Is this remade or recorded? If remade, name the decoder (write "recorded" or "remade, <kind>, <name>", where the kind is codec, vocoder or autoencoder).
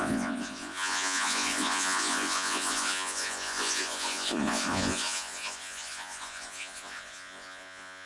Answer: remade, vocoder, Vocos